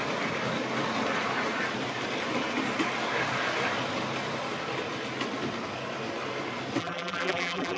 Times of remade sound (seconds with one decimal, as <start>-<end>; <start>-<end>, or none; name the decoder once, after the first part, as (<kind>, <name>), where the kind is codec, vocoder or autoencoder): 6.8-7.8 (vocoder, BigVGAN v2)